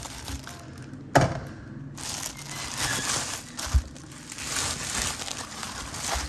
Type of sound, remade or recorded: recorded